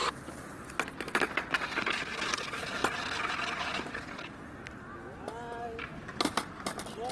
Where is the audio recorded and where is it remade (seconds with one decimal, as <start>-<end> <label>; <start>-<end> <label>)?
0.0-7.1 recorded